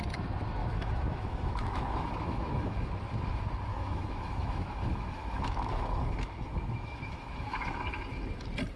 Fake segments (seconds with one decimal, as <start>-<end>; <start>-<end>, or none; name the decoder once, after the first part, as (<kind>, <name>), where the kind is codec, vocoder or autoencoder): 0.6-2.9 (autoencoder, DAC-VAE); 3.7-8.0